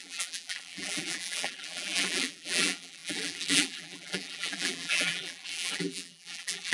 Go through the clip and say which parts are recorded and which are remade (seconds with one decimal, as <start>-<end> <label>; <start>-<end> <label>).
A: 0.0-6.7 remade